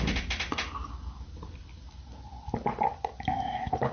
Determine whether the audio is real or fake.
real